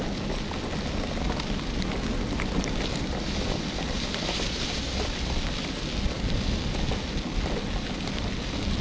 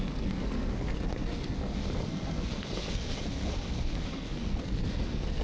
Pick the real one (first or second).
first